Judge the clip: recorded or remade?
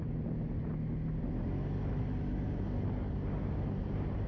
recorded